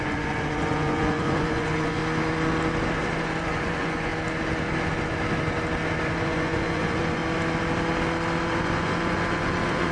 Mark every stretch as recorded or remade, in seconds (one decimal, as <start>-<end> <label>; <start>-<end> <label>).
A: 0.0-2.0 remade; 2.0-3.4 recorded; 3.4-4.1 remade; 4.1-6.1 recorded; 6.1-7.2 remade; 7.2-8.6 recorded; 8.6-9.9 remade